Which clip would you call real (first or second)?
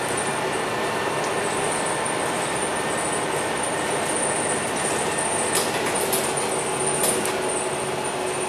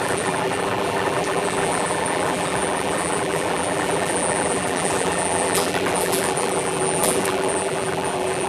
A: first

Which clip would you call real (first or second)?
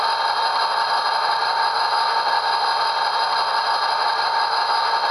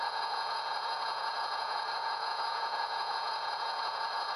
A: first